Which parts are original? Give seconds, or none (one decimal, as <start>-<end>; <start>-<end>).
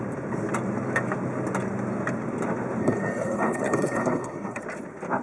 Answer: 0.0-2.8; 4.6-5.2